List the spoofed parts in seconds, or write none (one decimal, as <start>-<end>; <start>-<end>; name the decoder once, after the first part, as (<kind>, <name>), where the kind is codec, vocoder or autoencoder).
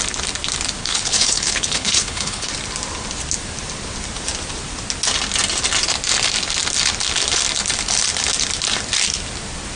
0.8-2.5 (codec, HILCodec)